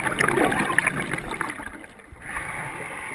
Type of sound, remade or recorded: recorded